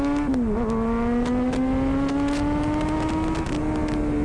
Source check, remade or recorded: recorded